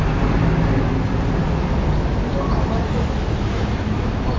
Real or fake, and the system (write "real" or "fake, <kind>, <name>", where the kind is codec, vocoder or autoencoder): real